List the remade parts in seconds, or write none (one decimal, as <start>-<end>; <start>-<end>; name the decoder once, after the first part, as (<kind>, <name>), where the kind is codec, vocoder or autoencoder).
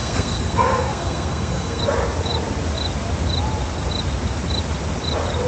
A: 0.0-1.8 (codec, SNAC)